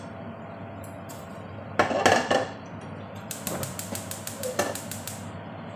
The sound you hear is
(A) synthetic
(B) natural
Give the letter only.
B